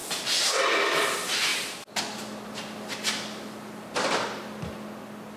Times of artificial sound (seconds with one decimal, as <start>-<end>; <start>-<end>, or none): none